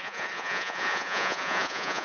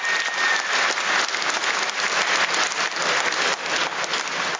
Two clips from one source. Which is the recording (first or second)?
second